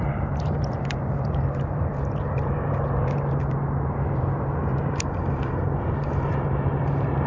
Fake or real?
fake